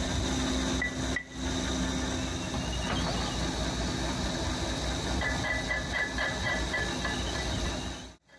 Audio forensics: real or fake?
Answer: real